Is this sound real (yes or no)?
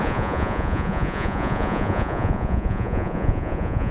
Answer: no